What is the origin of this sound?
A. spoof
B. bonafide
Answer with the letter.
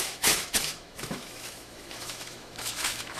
A